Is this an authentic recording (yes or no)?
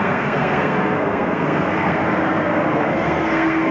no